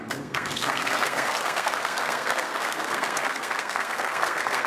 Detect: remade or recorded remade